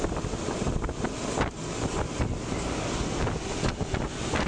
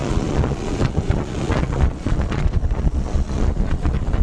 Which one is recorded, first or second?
first